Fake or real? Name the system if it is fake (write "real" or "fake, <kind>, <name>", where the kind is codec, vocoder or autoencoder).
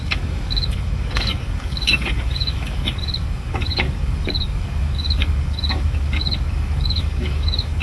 fake, codec, DAC